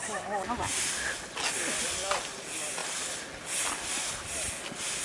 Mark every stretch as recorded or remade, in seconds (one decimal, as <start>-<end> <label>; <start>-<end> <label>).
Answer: 0.0-5.0 recorded